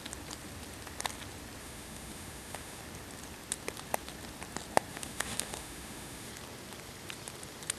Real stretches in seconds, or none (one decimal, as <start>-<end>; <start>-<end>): 0.0-1.6; 2.8-4.9; 6.3-7.8